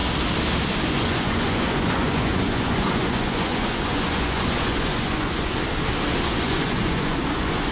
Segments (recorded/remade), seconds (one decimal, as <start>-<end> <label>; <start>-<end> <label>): 0.0-0.9 recorded; 0.9-5.6 remade; 5.6-6.2 recorded; 6.2-7.7 remade